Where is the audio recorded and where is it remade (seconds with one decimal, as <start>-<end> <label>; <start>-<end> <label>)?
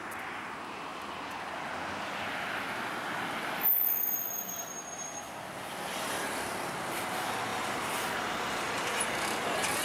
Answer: 0.0-7.5 recorded; 7.5-8.6 remade; 8.6-9.8 recorded